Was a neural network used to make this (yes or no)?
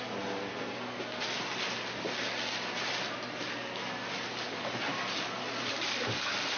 no